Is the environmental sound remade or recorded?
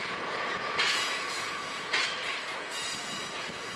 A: remade